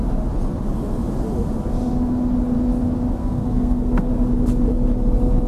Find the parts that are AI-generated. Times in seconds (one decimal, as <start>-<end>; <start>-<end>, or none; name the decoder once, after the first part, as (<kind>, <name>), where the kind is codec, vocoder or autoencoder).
3.2-4.1 (codec, SNAC)